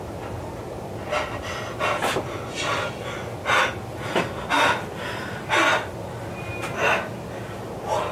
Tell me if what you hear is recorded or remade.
recorded